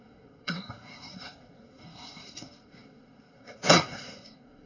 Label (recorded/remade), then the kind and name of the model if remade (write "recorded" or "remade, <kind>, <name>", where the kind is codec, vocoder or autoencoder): remade, codec, SNAC